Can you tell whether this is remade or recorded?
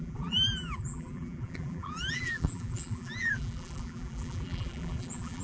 remade